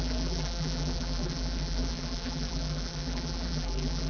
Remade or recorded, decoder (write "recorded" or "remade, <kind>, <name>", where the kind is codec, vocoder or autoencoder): remade, vocoder, BigVGAN v2